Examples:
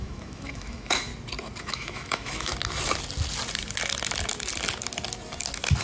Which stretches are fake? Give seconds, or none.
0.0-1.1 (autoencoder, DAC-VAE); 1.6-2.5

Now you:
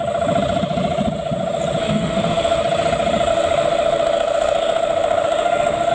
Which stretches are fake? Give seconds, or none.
1.8-2.6 (autoencoder, DAC-VAE); 3.3-5.9

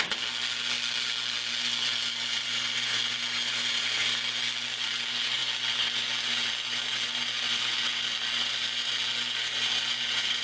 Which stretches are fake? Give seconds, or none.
none

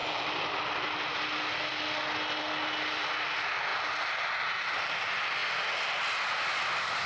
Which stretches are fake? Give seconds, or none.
none